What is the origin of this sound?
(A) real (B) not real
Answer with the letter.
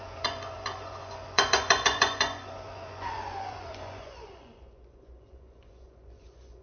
B